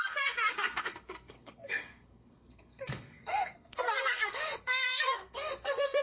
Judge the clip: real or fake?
fake